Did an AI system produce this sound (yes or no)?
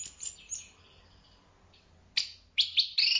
no